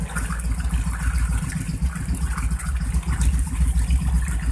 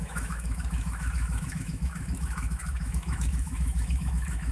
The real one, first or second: first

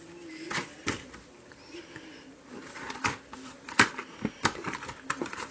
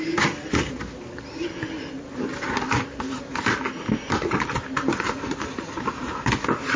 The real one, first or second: second